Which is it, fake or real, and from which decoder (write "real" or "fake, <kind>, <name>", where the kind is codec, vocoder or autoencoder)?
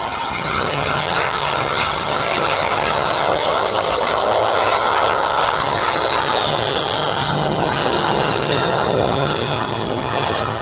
fake, vocoder, HiFi-GAN